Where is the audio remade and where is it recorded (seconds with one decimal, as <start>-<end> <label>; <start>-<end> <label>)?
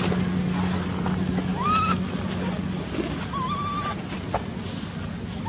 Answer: 0.0-5.5 recorded